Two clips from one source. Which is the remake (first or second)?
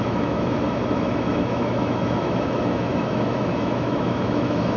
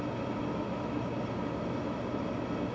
first